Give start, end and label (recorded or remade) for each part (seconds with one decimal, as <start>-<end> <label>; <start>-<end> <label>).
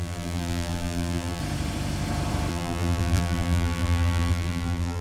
0.0-1.4 remade; 1.4-2.5 recorded; 2.5-5.0 remade